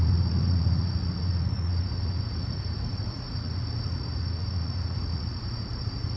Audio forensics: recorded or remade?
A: remade